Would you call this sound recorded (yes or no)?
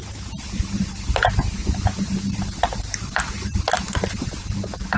no